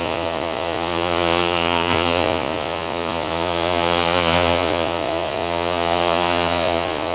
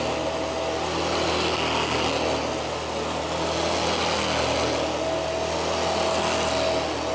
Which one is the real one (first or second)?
second